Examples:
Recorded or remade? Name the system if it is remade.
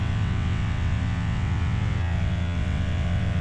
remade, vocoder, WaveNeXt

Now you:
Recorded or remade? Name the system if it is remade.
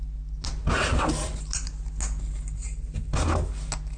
recorded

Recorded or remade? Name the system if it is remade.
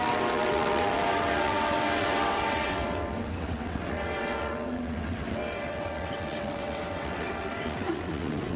remade, vocoder, WaveNeXt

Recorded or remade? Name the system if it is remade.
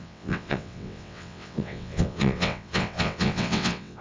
remade, vocoder, WaveNeXt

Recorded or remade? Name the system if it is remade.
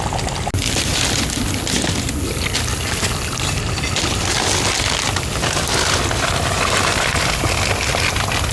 recorded